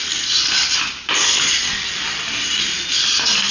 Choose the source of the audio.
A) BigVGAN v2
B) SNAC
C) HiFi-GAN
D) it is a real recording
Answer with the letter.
D